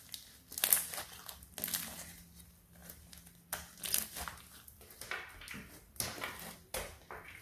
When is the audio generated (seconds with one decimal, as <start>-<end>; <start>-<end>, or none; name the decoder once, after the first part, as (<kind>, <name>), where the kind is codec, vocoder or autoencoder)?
none